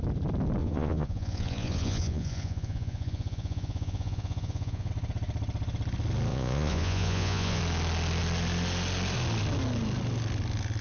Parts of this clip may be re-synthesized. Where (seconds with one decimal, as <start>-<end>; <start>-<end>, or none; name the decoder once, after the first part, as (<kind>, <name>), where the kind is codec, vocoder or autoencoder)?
0.6-4.9 (vocoder, Vocos); 6.3-7.6